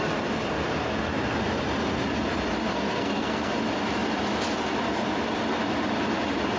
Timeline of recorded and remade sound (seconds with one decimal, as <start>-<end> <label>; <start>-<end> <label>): 0.0-2.7 recorded; 2.7-3.5 remade; 3.5-6.6 recorded